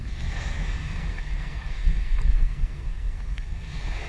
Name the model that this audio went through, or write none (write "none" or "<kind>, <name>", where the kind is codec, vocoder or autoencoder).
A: codec, SNAC